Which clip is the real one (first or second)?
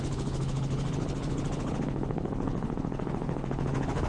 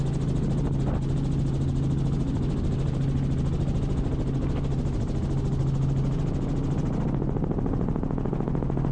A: second